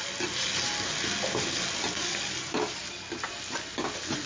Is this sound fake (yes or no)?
no